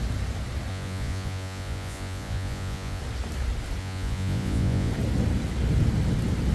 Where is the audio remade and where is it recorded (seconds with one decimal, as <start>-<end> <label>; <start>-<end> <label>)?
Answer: 0.0-0.7 recorded; 0.7-3.0 remade; 3.0-3.8 recorded; 3.8-4.9 remade; 4.9-6.5 recorded